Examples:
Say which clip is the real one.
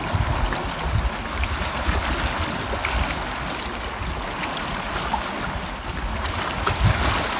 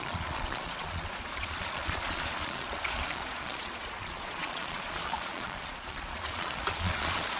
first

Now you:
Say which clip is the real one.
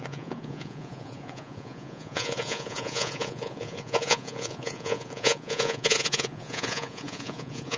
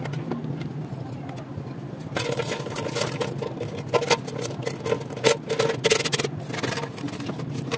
second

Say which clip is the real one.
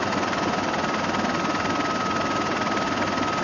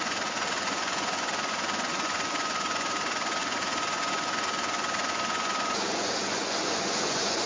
first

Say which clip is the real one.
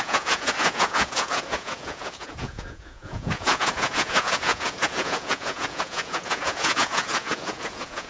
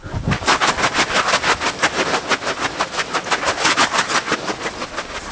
second